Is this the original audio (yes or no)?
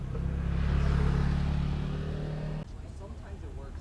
yes